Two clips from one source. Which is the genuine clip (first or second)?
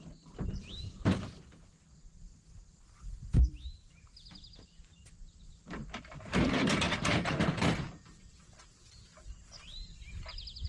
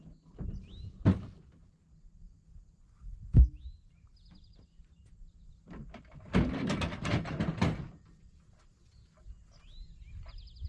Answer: second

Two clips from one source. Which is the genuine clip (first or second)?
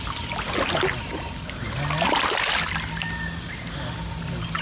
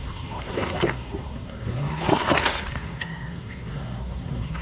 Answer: first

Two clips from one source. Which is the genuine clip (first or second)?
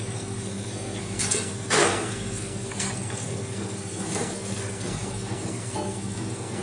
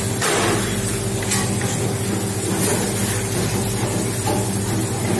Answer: second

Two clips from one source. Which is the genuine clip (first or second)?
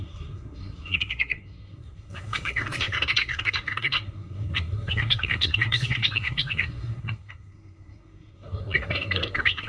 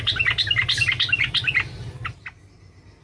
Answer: second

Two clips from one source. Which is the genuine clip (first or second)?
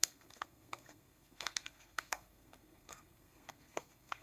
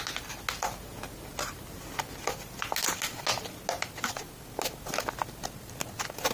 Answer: second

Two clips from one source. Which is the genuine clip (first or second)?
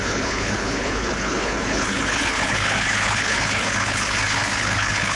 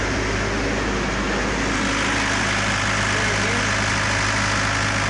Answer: second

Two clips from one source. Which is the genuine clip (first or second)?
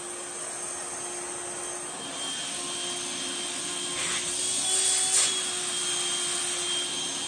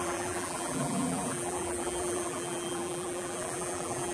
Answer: first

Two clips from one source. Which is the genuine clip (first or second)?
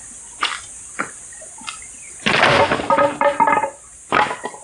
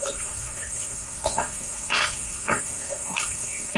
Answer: first